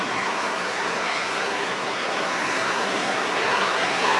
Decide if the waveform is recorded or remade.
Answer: remade